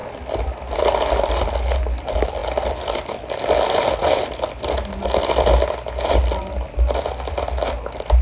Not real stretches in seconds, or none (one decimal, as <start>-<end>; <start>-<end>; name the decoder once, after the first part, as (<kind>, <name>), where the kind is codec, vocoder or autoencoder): none